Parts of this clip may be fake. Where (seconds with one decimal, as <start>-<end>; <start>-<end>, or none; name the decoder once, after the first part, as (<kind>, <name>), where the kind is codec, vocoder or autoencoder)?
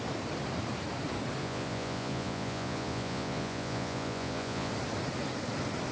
1.4-4.7 (vocoder, Vocos)